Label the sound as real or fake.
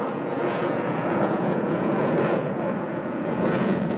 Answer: fake